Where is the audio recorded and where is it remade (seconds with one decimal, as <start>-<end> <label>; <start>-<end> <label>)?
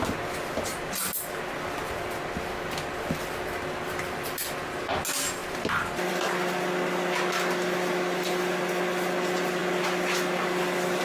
0.0-11.0 recorded